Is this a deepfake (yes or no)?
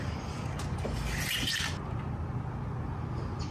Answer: no